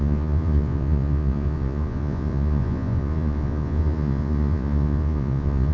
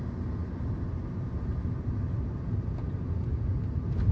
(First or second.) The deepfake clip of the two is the first